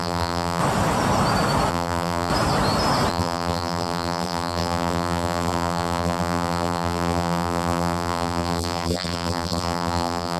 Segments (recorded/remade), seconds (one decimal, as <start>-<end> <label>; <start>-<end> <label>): 0.0-0.6 remade; 0.6-1.7 recorded; 1.7-2.3 remade; 2.3-3.1 recorded; 3.1-10.4 remade